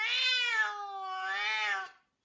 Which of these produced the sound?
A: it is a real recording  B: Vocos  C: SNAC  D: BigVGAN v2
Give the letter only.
A